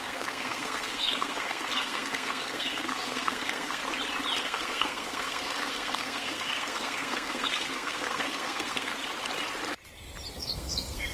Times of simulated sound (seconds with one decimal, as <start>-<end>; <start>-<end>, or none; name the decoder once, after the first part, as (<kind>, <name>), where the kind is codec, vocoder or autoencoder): 0.0-3.8 (codec, SNAC); 4.4-8.9; 10.3-11.1